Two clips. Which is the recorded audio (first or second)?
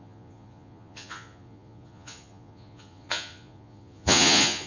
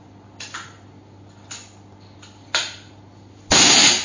second